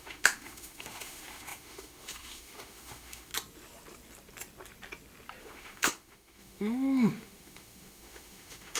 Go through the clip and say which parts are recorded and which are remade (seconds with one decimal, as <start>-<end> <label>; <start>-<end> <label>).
0.0-3.3 remade; 3.3-5.4 recorded; 5.4-8.8 remade